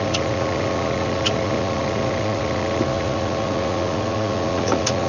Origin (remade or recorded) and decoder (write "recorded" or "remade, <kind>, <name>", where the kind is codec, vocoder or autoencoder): remade, vocoder, Vocos